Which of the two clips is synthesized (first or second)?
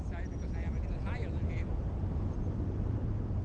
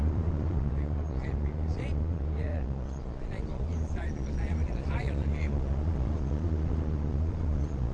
second